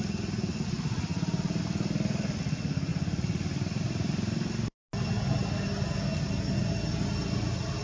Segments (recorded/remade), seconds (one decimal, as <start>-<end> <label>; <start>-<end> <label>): 0.0-7.8 recorded